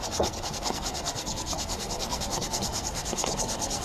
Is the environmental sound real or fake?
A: fake